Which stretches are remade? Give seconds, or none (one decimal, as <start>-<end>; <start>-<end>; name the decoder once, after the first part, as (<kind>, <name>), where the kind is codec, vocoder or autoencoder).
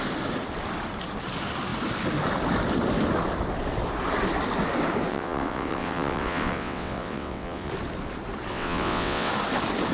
5.1-7.7 (vocoder, WaveNeXt); 8.5-9.3